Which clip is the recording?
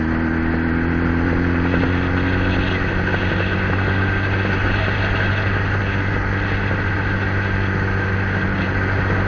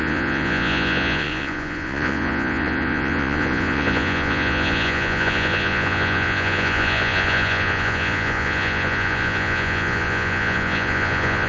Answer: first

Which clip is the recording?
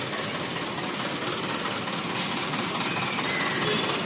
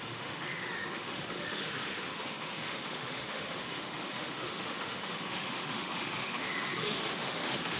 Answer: first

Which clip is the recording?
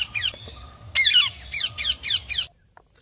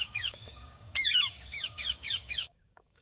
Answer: first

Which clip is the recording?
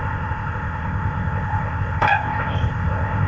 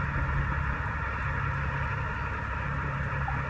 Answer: second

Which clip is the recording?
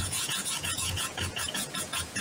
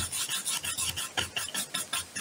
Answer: second